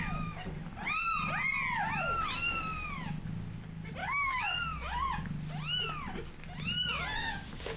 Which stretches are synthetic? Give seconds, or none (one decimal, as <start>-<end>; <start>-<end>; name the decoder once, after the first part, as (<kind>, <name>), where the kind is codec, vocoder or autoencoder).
4.0-4.6 (codec, DAC); 7.2-7.8